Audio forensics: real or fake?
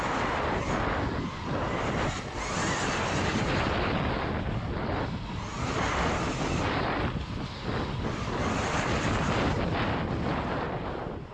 real